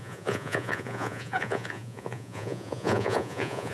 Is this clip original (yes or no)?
no